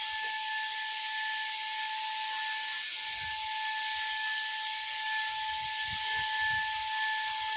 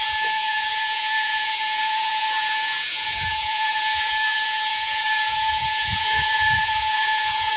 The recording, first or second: first